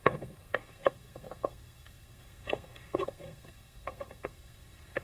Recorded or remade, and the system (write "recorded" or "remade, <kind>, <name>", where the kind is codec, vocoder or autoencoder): remade, codec, SNAC